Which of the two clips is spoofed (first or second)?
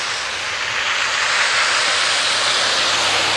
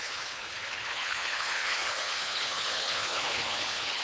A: second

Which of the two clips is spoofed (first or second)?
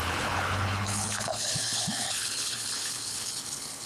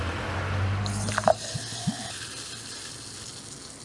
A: first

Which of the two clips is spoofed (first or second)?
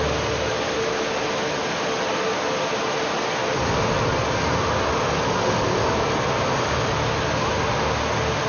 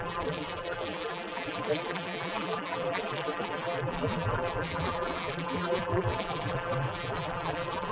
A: second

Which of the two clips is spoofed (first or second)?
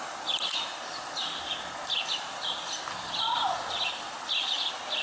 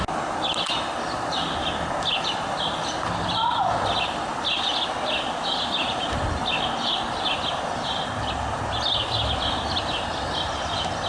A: first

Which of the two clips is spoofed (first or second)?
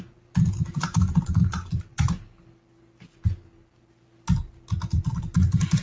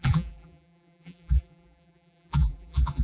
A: second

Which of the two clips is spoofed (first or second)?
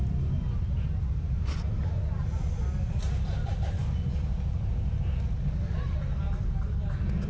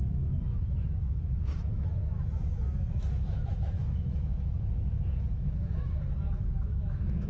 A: second